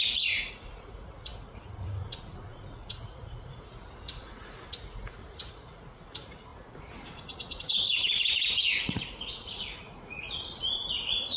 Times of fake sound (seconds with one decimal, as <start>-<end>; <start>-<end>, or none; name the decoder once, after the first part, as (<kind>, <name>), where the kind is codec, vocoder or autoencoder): 0.0-11.4 (vocoder, Vocos)